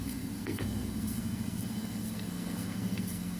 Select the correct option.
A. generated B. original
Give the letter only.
A